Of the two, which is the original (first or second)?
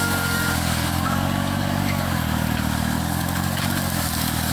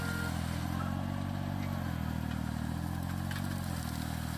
second